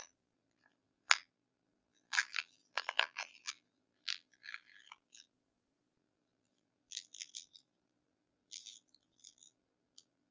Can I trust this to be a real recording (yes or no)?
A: no